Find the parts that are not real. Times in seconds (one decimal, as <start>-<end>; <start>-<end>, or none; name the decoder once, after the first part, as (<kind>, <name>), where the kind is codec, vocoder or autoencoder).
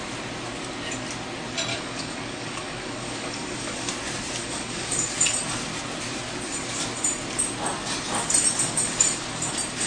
1.7-3.9 (codec, DAC); 4.4-5.1